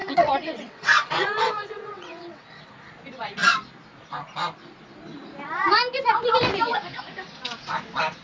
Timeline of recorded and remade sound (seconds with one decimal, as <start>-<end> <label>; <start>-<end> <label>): 0.0-2.7 remade; 2.7-8.2 recorded